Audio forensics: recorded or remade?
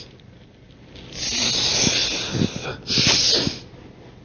recorded